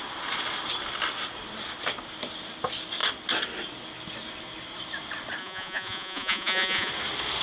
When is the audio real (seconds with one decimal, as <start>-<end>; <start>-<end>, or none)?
0.0-5.4; 6.9-7.4